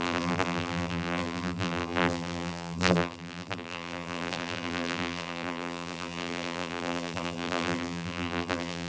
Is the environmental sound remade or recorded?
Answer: remade